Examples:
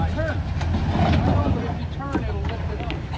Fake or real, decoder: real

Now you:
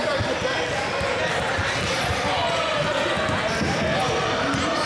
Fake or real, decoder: real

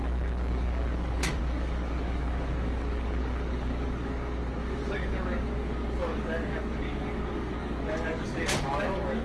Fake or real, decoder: fake, codec, DAC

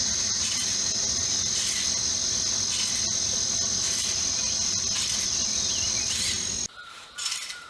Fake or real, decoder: real